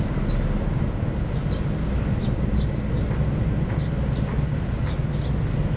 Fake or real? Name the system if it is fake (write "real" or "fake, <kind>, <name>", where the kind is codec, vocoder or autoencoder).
real